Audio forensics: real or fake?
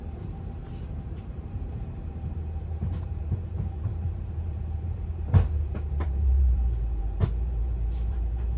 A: fake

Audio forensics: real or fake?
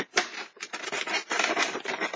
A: fake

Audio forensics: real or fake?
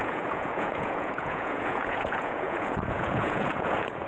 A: fake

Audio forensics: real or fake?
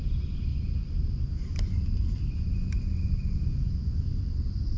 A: real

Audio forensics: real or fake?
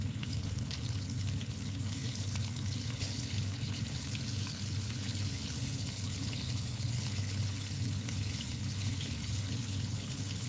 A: fake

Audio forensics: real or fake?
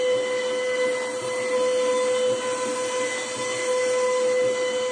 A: real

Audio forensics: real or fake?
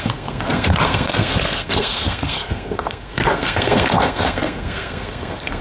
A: fake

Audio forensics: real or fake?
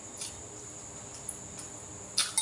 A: real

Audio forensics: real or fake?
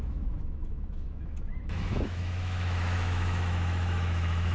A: fake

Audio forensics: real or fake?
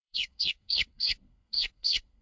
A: fake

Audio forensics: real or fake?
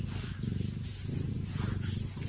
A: real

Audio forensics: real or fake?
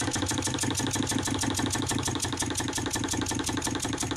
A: real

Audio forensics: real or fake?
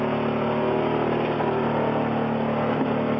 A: real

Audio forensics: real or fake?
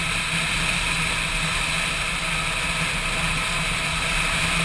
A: real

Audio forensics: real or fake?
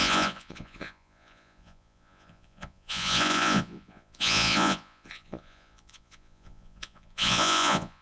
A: fake